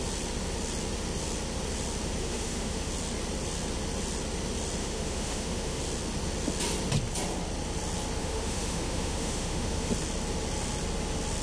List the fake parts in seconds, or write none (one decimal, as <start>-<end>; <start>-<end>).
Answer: 2.2-2.9; 4.8-5.8; 8.2-9.9